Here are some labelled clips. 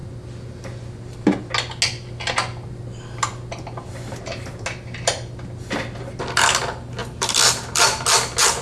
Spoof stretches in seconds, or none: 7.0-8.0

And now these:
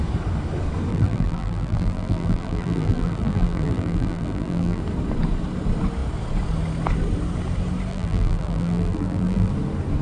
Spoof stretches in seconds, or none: 0.9-4.8; 7.9-9.5

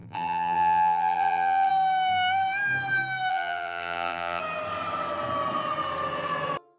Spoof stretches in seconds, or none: 0.0-1.7; 3.3-4.4

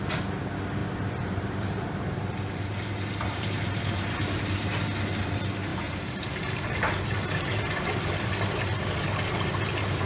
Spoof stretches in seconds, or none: 0.8-4.7; 5.7-8.8

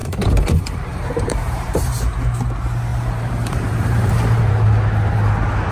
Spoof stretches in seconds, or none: 0.0-2.0; 2.9-4.5